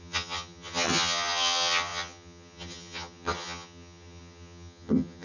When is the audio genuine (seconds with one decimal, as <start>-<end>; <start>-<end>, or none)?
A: none